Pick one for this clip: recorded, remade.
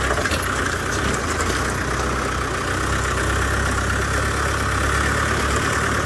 recorded